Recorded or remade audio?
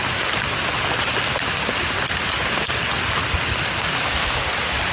recorded